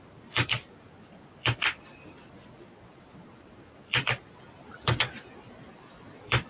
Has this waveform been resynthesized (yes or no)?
yes